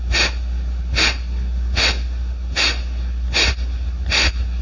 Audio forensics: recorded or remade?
recorded